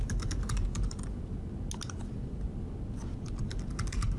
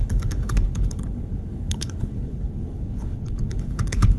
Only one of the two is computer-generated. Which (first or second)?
second